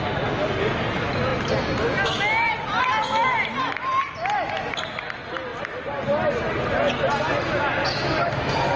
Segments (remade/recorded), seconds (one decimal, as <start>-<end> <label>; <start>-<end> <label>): 0.0-8.8 recorded